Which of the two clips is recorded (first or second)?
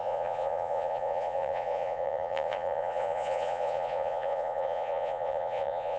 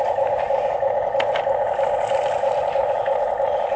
second